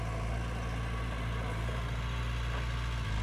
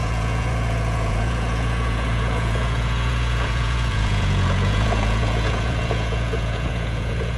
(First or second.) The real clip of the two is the first